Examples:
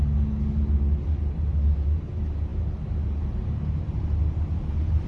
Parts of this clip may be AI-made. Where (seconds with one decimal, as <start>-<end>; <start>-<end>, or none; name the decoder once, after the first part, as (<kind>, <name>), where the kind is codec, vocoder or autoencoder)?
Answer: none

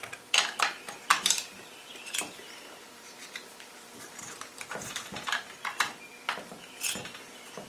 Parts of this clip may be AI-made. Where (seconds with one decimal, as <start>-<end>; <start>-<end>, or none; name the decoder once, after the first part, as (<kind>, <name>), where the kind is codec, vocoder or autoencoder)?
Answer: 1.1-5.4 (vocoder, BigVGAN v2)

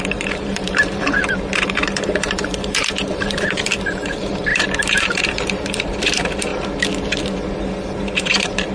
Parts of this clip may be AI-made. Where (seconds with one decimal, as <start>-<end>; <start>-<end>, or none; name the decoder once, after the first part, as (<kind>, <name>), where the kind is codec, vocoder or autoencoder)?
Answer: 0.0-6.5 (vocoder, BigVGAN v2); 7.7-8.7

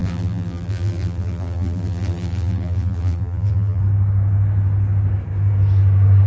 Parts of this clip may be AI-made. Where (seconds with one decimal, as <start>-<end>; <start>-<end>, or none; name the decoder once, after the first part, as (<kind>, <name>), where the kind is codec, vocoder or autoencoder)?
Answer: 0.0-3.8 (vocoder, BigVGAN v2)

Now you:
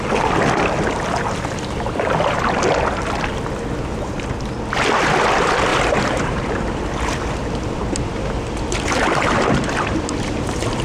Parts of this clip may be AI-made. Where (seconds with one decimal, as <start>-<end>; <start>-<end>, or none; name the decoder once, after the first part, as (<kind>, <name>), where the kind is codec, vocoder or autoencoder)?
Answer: 5.7-6.8 (vocoder, BigVGAN v2)